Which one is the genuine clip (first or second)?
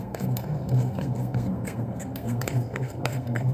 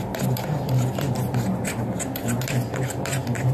second